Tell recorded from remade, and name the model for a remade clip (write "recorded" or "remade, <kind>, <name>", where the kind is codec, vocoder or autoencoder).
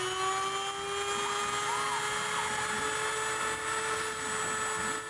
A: recorded